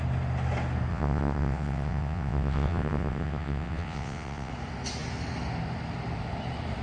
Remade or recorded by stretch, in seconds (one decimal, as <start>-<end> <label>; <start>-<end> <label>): 0.0-0.9 recorded; 0.9-4.5 remade; 4.5-6.8 recorded